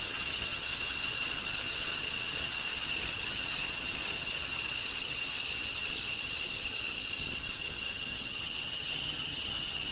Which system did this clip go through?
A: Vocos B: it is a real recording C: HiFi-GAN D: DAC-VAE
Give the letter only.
C